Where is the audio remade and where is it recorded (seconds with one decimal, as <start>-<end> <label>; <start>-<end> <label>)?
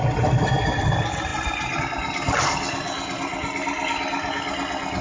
0.0-5.0 recorded